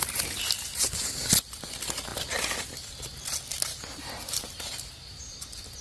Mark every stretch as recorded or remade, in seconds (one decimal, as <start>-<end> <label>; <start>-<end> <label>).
0.0-5.8 recorded